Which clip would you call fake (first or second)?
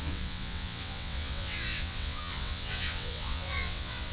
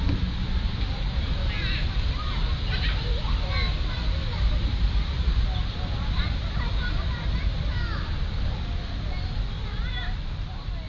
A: first